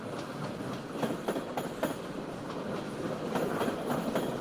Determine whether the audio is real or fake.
real